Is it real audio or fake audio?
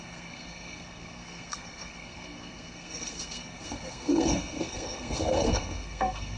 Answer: fake